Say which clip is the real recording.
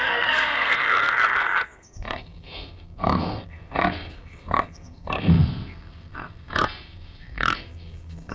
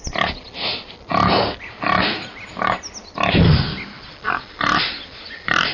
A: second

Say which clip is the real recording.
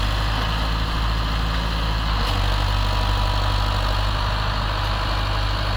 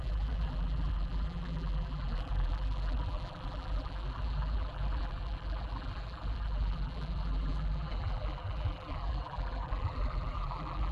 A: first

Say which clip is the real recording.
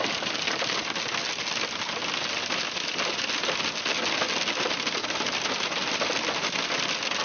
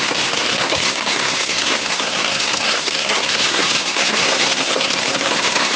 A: first